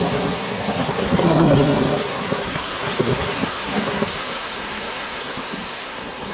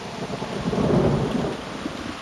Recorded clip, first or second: second